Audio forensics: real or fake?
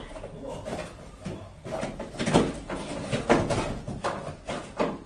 real